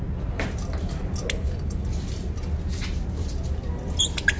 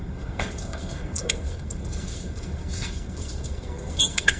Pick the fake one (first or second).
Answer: second